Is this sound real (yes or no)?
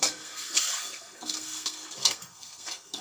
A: no